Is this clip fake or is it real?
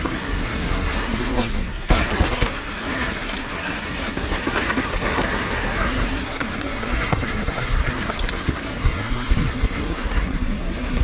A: fake